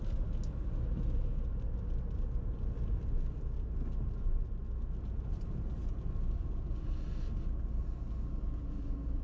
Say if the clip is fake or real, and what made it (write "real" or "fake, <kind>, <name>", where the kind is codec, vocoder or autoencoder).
real